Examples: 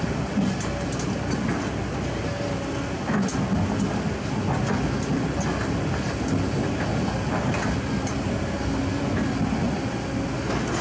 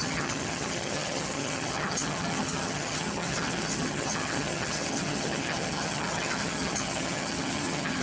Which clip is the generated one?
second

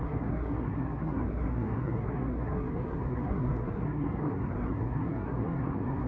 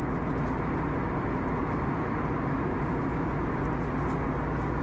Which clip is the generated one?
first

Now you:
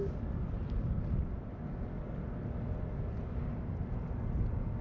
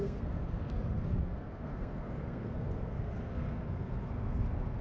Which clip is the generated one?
second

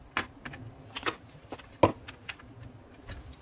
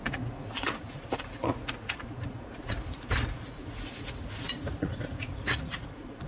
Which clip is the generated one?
second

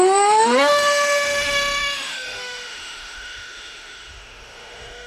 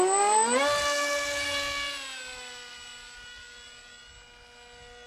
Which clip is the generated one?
first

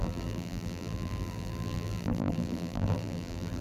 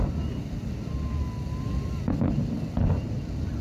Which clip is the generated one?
first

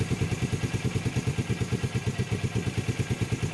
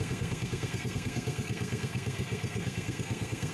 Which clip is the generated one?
second